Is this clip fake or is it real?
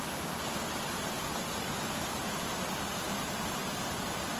real